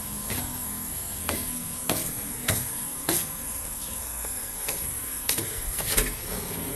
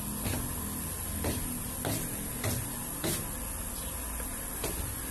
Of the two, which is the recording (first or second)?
second